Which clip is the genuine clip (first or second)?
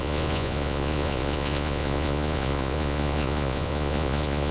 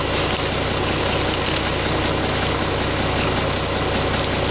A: second